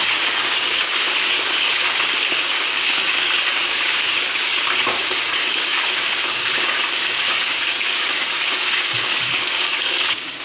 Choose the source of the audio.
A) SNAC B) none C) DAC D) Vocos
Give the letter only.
C